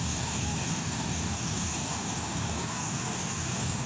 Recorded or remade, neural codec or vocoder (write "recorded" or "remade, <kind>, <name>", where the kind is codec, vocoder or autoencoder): remade, codec, DAC